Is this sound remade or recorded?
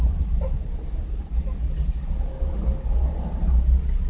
recorded